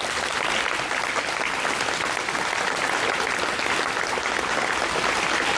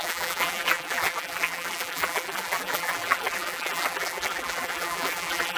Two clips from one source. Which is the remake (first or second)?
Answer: second